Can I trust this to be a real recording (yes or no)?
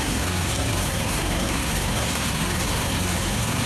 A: no